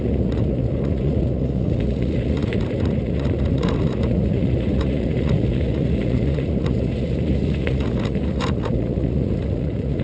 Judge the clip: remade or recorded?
remade